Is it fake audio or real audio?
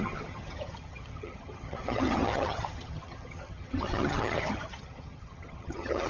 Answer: fake